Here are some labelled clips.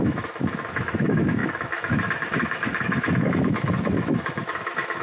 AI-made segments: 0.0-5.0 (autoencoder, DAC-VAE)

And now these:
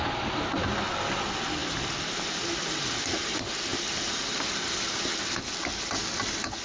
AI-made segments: none